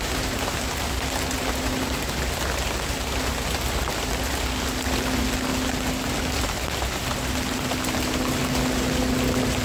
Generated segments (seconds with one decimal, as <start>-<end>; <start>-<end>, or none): none